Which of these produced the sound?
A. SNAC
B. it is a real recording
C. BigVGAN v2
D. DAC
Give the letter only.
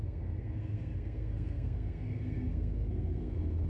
A